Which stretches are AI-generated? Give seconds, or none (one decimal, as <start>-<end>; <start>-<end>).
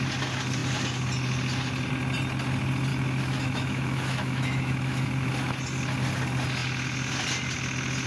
2.9-5.3